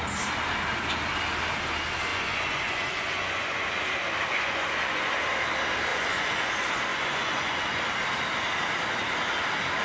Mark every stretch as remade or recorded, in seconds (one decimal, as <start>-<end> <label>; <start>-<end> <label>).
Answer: 0.0-2.1 recorded; 2.1-3.7 remade; 3.7-4.3 recorded; 4.3-5.1 remade; 5.1-5.9 recorded; 5.9-6.5 remade; 6.5-6.9 recorded; 6.9-7.8 remade; 7.8-9.8 recorded